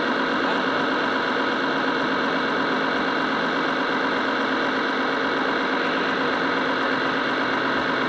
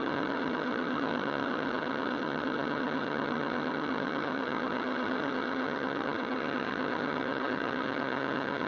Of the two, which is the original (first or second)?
first